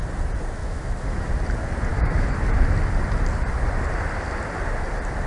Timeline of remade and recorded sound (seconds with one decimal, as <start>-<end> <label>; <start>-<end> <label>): 0.0-0.6 recorded; 0.6-1.3 remade; 1.3-1.9 recorded; 1.9-2.4 remade; 2.4-5.3 recorded